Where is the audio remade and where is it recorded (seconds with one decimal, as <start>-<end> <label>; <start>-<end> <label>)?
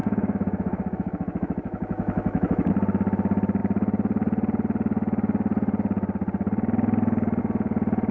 0.0-2.7 remade; 2.7-8.1 recorded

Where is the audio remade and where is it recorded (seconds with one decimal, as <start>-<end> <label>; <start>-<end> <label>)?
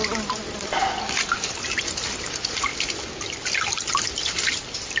0.0-5.0 recorded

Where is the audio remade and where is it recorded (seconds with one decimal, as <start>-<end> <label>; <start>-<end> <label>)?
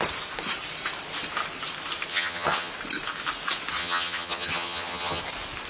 0.0-2.1 recorded; 2.1-2.7 remade; 2.7-3.8 recorded; 3.8-5.2 remade; 5.2-5.7 recorded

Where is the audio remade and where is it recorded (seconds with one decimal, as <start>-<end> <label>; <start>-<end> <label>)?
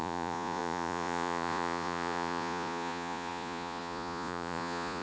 0.0-5.0 remade